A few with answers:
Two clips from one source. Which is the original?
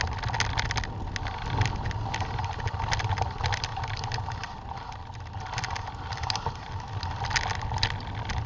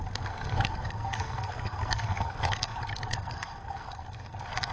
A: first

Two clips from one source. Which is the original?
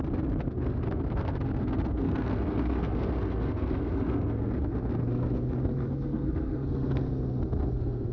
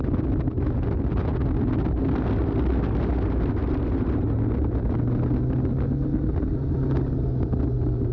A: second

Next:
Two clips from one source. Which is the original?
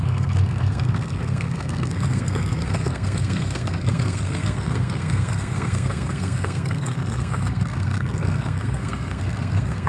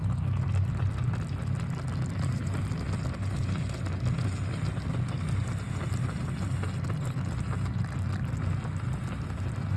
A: second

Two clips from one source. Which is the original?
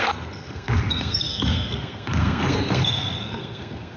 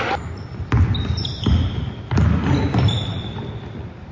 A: second